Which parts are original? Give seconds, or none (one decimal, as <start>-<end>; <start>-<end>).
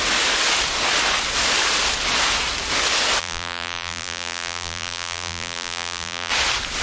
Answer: 0.0-3.2; 6.3-6.8